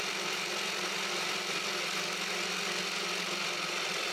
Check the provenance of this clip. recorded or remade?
recorded